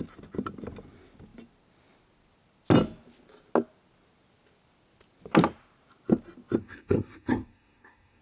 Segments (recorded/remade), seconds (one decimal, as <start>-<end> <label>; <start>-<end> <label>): 0.0-6.6 recorded; 6.6-8.2 remade